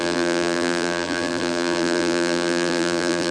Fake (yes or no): yes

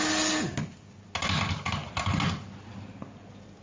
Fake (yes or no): no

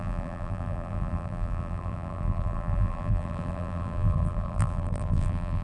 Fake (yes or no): yes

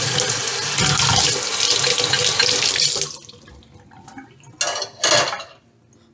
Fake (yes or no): no